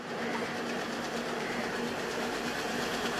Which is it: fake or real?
fake